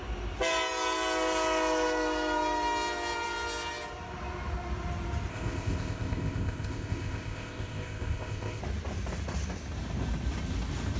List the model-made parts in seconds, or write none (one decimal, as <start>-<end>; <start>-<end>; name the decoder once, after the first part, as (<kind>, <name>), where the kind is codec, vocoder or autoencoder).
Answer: 5.3-8.6 (codec, ZipCodec)